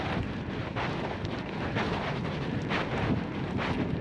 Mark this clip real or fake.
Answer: fake